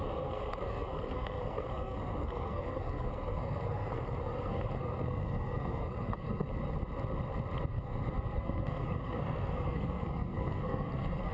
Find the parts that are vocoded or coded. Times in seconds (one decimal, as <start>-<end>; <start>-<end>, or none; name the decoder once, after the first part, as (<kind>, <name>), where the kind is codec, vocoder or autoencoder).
0.0-6.5 (codec, SNAC); 7.7-11.3